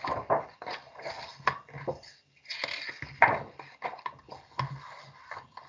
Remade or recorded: recorded